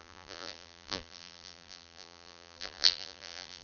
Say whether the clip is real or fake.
fake